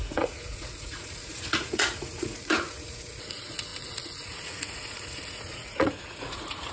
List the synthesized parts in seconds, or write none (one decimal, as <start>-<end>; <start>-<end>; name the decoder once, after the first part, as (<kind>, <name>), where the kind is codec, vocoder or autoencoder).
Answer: 0.0-6.7 (vocoder, Vocos)